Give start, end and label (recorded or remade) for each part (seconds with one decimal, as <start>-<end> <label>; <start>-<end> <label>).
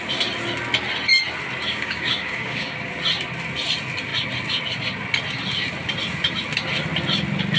0.0-1.7 recorded; 1.7-2.9 remade; 2.9-7.6 recorded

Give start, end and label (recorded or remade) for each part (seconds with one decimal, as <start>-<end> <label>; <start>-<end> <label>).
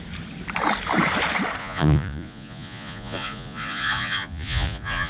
0.0-1.6 recorded; 1.6-5.1 remade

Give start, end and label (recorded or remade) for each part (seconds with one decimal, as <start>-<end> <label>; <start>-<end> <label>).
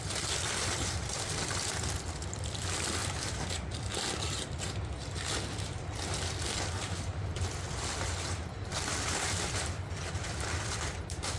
0.0-3.0 remade; 3.0-6.8 recorded; 6.8-11.4 remade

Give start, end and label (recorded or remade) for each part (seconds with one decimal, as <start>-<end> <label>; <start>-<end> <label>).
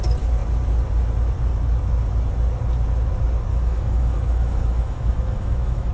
0.0-3.5 recorded; 3.5-5.9 remade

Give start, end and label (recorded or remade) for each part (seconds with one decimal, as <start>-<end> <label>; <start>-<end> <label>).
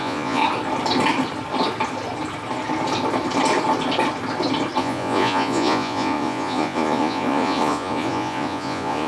0.0-0.4 remade; 0.4-4.8 recorded; 4.8-9.1 remade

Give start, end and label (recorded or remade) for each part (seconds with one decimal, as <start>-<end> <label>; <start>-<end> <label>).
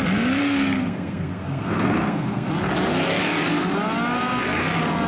0.0-0.4 recorded; 0.4-2.5 remade; 2.5-5.1 recorded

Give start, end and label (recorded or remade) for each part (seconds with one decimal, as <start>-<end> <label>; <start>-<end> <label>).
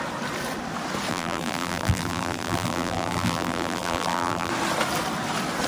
0.0-1.1 recorded; 1.1-4.5 remade; 4.5-5.7 recorded